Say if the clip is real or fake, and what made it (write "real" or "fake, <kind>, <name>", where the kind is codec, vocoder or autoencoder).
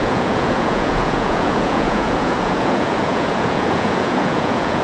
fake, vocoder, Vocos